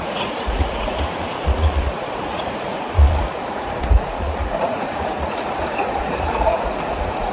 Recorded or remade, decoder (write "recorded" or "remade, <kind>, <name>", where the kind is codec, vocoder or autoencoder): remade, vocoder, Vocos